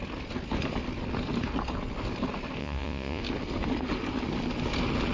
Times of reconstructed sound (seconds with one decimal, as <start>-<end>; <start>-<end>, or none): 2.6-3.2